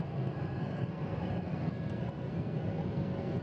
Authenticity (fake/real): fake